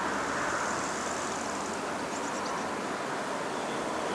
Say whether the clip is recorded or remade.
recorded